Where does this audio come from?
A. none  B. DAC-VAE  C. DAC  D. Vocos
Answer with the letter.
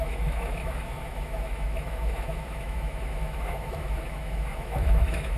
B